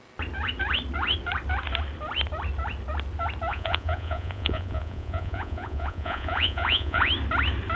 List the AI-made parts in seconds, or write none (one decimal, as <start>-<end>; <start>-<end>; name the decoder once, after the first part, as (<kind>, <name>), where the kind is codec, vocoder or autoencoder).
3.5-7.1 (vocoder, Vocos)

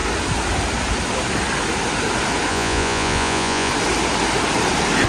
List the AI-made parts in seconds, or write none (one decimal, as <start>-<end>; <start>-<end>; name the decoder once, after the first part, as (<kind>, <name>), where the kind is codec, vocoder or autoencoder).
2.5-3.7 (vocoder, Vocos)

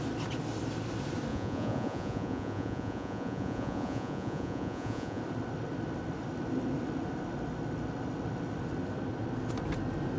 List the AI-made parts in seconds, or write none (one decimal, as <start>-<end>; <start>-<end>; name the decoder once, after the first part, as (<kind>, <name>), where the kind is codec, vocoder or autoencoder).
1.3-5.2 (vocoder, Vocos)

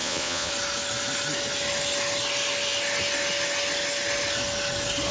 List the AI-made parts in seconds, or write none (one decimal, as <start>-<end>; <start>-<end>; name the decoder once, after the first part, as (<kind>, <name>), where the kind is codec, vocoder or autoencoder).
0.0-0.5 (vocoder, Vocos)

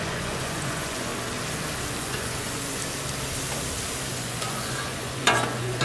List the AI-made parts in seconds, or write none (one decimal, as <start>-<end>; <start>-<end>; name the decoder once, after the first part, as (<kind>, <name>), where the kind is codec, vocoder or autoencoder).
0.0-1.1 (vocoder, Vocos); 2.0-2.8; 4.1-5.8

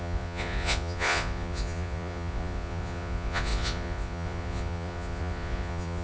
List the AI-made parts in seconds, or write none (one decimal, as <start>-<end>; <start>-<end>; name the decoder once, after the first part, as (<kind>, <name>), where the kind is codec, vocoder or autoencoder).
0.0-6.0 (vocoder, Vocos)

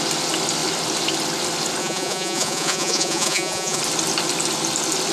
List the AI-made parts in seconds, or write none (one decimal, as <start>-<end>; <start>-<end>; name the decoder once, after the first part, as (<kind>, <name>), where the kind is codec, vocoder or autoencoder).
1.8-3.8 (vocoder, Vocos)